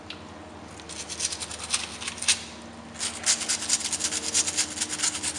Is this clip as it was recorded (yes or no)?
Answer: yes